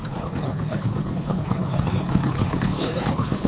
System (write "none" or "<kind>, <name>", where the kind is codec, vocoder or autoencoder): codec, HILCodec